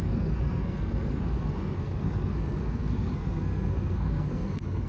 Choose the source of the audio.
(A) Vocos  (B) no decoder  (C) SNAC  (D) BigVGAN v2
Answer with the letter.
C